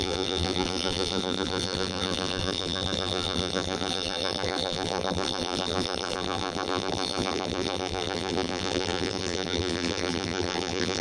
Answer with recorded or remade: remade